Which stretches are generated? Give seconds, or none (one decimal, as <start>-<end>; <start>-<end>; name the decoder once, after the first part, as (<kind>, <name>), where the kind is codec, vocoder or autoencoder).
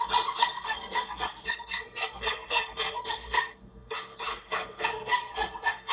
0.4-3.9 (codec, SNAC); 4.3-5.9